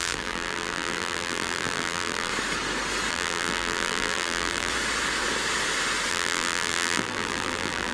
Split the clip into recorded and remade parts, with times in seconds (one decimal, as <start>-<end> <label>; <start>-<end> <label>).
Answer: 0.0-2.3 remade; 2.3-3.1 recorded; 3.1-4.7 remade; 4.7-6.1 recorded; 6.1-7.9 remade